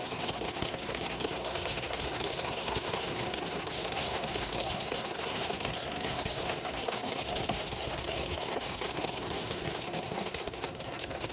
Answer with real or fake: fake